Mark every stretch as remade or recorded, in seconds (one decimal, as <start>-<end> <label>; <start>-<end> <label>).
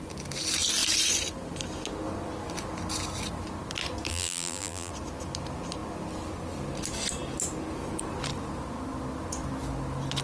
0.0-4.1 recorded; 4.1-4.9 remade; 4.9-10.2 recorded